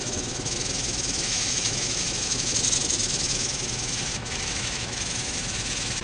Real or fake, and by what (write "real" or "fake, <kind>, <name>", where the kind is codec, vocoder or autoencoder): fake, autoencoder, DAC-VAE